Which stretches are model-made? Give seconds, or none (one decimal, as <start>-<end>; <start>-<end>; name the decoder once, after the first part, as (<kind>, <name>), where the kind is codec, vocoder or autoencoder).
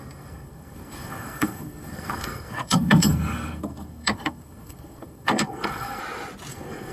0.0-6.0 (codec, SNAC); 6.5-6.9